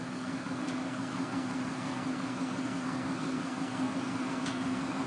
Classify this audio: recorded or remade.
remade